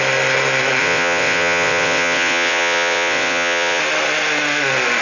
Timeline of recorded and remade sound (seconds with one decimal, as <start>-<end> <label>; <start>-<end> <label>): 0.0-0.8 recorded; 0.8-3.8 remade; 3.8-5.0 recorded